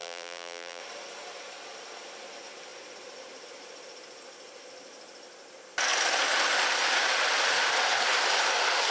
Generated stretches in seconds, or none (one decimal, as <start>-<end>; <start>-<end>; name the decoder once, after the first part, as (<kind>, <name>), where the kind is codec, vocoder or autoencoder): 0.0-0.8 (vocoder, BigVGAN v2)